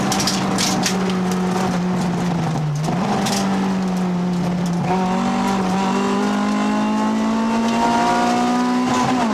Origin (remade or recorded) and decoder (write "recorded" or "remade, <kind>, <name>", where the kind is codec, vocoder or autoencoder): recorded